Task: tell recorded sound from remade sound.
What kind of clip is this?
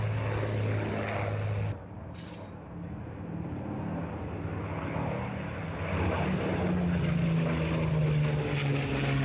recorded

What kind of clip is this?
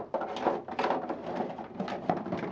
recorded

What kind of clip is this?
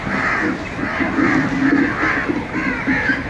recorded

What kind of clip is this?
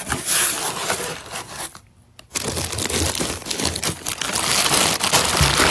recorded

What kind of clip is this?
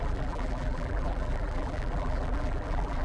remade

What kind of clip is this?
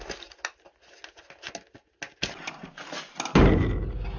recorded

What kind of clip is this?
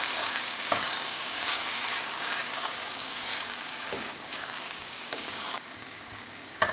remade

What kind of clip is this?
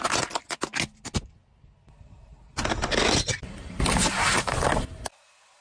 recorded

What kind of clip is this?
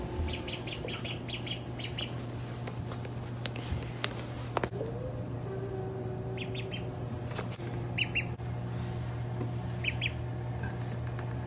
recorded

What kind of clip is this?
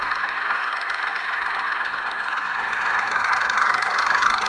remade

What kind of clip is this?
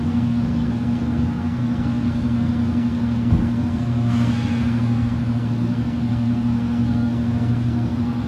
remade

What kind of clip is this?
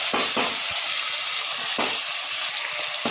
recorded